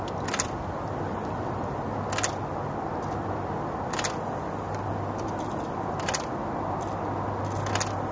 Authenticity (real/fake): real